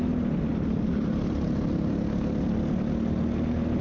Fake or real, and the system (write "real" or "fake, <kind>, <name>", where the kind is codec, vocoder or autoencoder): real